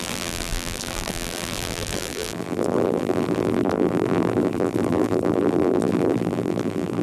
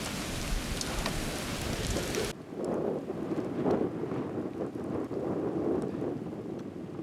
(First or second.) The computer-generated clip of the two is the first